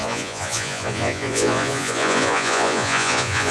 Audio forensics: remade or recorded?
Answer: remade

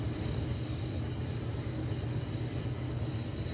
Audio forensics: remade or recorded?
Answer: recorded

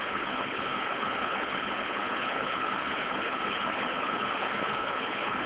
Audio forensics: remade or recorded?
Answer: remade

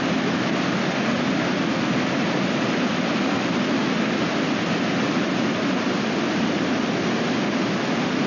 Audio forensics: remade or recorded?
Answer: recorded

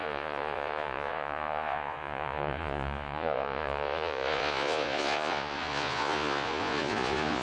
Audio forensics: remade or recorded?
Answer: remade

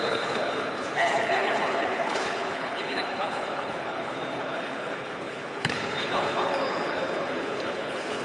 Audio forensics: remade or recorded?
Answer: remade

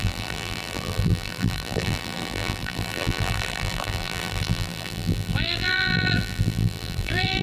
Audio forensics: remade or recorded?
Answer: remade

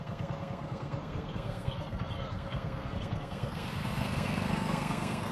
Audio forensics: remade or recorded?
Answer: remade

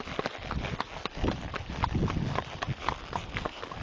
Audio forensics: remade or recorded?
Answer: recorded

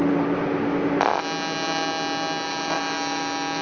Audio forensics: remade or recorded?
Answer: recorded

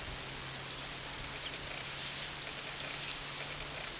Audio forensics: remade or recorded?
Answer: recorded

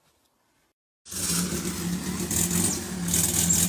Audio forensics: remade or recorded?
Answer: recorded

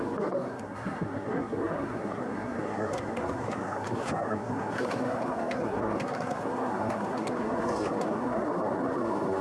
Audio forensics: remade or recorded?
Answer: remade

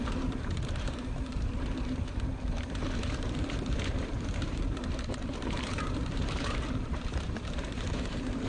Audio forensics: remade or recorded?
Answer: remade